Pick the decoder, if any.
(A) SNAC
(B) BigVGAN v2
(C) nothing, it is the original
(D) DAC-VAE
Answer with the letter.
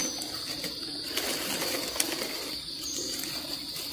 C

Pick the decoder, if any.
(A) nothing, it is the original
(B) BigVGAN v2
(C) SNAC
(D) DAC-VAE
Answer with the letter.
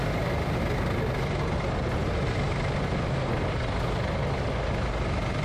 A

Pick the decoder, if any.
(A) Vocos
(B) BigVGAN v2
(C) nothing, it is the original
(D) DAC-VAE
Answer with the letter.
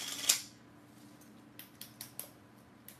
C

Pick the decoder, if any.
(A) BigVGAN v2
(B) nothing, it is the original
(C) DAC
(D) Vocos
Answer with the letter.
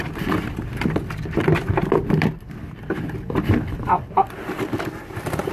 A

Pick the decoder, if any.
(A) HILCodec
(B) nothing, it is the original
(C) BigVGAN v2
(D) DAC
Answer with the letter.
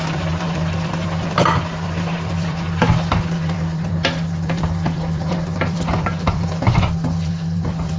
C